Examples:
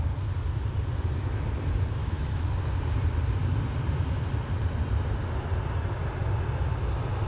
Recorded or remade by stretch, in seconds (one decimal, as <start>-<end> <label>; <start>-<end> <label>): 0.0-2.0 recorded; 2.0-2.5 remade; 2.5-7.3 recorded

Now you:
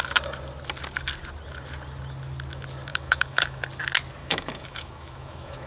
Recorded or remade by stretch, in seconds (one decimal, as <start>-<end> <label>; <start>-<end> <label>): 0.0-2.9 recorded; 2.9-3.6 remade; 3.6-4.2 recorded; 4.2-5.7 remade

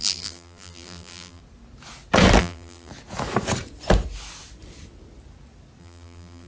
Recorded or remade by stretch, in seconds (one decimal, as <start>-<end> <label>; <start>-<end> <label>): 0.0-1.4 remade; 1.4-2.4 recorded; 2.4-2.9 remade; 2.9-5.8 recorded; 5.8-6.5 remade

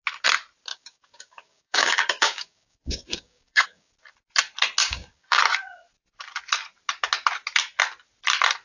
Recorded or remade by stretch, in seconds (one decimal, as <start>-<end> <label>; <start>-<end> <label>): 0.0-0.7 recorded; 0.7-3.9 remade; 3.9-4.8 recorded; 4.8-5.4 remade; 5.4-8.6 recorded

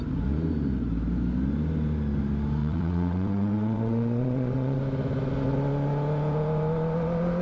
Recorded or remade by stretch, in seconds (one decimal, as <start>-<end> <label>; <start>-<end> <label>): 0.0-2.6 recorded; 2.6-4.8 remade; 4.8-7.4 recorded

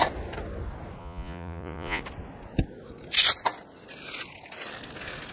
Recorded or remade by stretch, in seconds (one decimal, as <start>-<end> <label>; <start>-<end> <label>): 0.0-1.0 recorded; 1.0-2.0 remade; 2.0-5.3 recorded

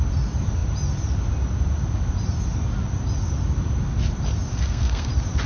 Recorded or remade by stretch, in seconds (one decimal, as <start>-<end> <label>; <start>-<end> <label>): 0.0-4.5 recorded; 4.5-5.1 remade; 5.1-5.5 recorded

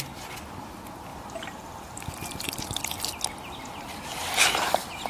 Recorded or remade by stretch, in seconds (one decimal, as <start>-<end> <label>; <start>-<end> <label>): 0.0-1.1 recorded; 1.1-2.8 remade; 2.8-5.1 recorded